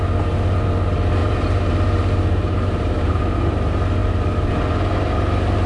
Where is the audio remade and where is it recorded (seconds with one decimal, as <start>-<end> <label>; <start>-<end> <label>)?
0.0-1.2 recorded; 1.2-3.2 remade; 3.2-5.7 recorded